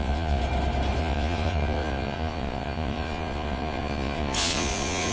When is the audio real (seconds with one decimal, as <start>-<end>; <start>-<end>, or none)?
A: 0.4-1.0